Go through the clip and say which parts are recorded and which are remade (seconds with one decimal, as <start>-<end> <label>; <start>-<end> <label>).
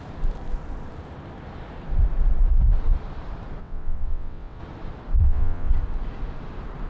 0.0-3.6 recorded; 3.6-4.6 remade; 4.6-5.2 recorded; 5.2-5.7 remade; 5.7-6.9 recorded